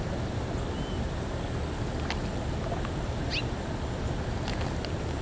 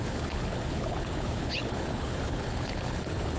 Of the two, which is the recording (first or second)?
first